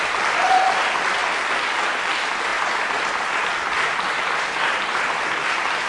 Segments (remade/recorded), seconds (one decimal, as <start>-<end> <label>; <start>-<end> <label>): 0.0-1.2 remade; 1.2-2.1 recorded; 2.1-5.9 remade